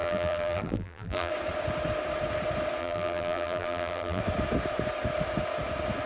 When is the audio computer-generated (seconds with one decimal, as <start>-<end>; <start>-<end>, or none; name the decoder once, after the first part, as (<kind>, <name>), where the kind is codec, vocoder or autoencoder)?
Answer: 0.0-1.3 (vocoder, BigVGAN v2); 2.8-4.2